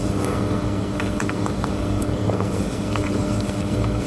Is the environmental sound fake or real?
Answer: fake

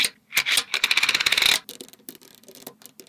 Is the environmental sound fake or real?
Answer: real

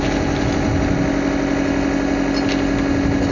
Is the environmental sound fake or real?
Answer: real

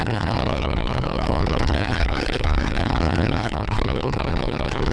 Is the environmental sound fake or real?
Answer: fake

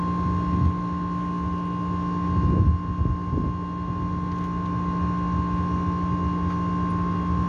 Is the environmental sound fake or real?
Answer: real